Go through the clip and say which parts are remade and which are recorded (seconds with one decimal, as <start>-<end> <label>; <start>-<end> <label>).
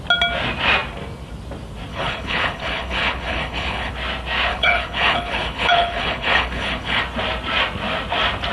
0.0-1.9 recorded; 1.9-3.9 remade; 3.9-4.5 recorded; 4.5-7.0 remade; 7.0-8.5 recorded